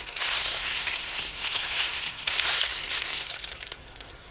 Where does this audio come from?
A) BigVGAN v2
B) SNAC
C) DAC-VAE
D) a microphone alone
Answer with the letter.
B